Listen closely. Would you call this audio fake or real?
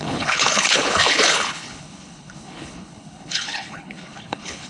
fake